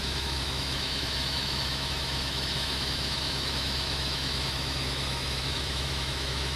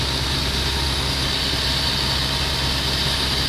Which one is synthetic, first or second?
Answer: first